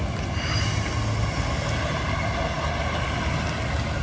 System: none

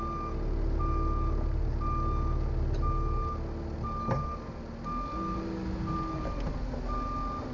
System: none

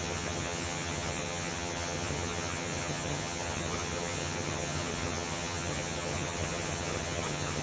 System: vocoder, HiFi-GAN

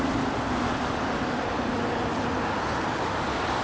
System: none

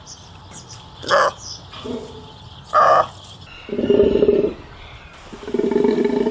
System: none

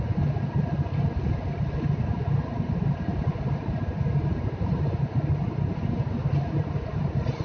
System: none